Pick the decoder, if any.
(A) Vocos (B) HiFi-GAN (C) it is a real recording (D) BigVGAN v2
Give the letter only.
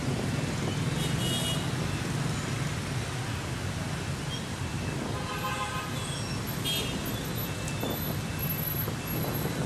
C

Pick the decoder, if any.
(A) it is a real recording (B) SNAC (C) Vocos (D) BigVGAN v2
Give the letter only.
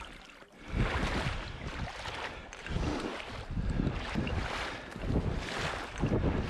A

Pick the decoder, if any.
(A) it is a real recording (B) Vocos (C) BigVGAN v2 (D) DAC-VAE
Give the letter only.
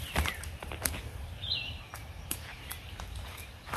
C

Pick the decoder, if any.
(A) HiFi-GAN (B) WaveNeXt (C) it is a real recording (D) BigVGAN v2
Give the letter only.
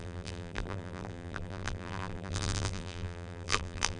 D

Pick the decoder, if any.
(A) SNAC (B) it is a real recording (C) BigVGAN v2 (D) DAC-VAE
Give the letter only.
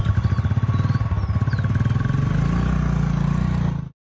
B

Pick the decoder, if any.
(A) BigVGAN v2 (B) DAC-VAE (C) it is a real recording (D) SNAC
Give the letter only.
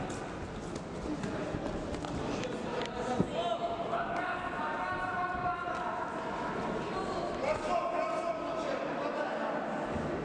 C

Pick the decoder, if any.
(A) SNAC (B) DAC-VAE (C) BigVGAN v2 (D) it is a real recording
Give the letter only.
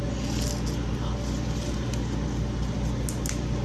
D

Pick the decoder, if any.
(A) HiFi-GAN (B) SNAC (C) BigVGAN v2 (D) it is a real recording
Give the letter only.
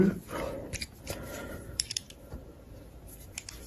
C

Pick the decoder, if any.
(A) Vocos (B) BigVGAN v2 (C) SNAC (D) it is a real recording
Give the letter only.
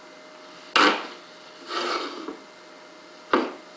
D